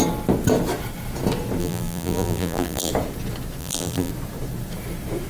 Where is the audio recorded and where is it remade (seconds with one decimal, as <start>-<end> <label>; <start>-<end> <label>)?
0.0-1.6 recorded; 1.6-2.9 remade; 2.9-3.6 recorded; 3.6-4.1 remade; 4.1-5.3 recorded